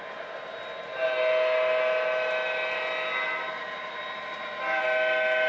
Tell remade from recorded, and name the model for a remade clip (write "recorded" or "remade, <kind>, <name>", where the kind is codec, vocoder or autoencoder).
recorded